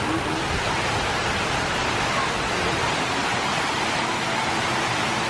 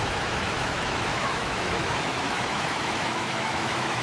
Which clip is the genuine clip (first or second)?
first